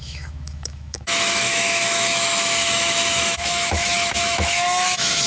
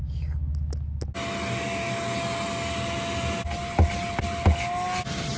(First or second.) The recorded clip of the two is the second